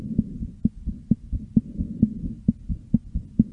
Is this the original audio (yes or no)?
yes